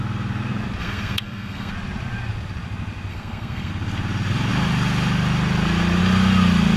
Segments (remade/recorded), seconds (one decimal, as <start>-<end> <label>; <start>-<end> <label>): 0.0-0.8 recorded; 0.8-1.7 remade; 1.7-3.1 recorded; 3.1-3.7 remade; 3.7-6.8 recorded